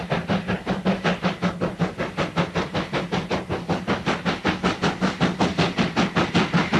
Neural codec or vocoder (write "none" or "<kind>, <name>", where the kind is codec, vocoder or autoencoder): none